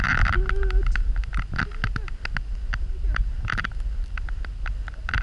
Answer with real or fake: real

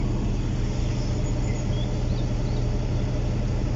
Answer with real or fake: real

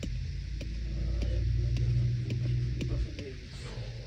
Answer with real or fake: real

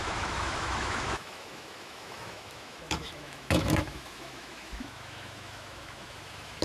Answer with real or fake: fake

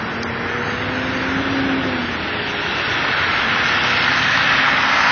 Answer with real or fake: real